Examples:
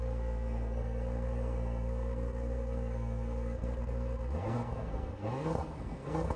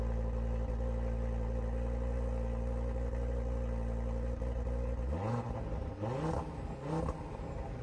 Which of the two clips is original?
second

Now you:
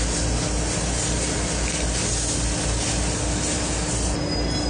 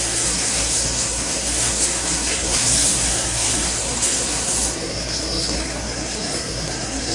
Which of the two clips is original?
first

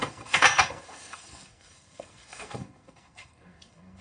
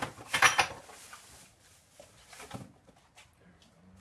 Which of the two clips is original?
second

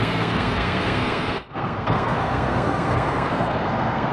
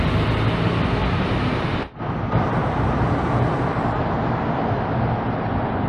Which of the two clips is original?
second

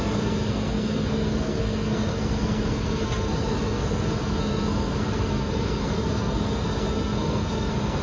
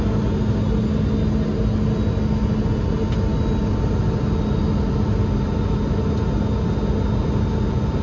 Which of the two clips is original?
second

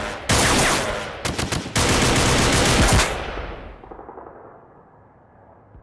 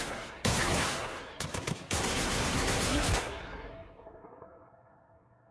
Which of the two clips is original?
first